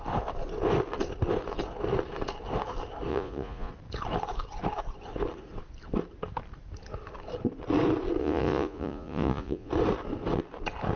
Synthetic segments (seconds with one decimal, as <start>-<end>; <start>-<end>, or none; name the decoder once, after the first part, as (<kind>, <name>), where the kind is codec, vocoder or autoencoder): 3.1-3.7 (vocoder, Vocos); 8.2-9.7